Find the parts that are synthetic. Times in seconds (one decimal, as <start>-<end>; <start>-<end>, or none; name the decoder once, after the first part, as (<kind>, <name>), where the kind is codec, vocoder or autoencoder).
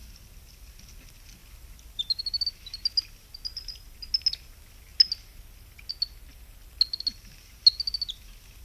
none